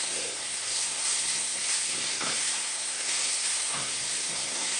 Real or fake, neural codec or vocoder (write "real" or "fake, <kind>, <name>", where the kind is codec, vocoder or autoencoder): fake, codec, SNAC